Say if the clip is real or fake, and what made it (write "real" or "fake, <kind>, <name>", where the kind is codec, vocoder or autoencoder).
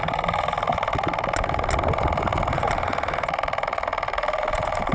real